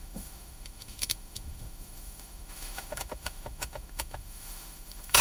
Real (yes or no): no